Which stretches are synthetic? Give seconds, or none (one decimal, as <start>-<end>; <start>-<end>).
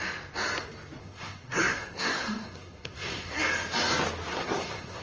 1.0-3.4; 4.3-5.0